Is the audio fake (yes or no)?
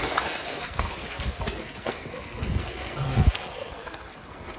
yes